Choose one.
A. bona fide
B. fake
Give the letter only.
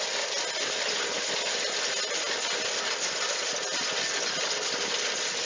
A